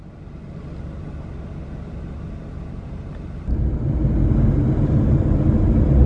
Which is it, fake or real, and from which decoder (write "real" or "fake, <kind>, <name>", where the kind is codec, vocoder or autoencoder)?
real